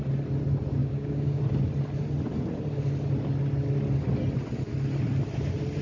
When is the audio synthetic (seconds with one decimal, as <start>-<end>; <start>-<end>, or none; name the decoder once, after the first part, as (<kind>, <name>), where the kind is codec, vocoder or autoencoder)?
0.8-1.4 (codec, DAC)